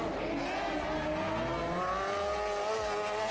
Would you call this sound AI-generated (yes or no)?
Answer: no